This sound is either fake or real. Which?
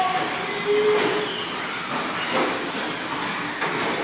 real